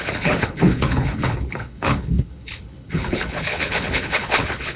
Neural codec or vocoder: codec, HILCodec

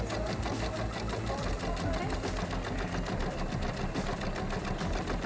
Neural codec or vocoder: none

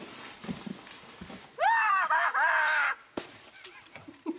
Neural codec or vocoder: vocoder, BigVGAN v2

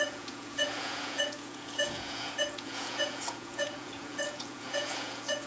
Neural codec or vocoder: vocoder, Vocos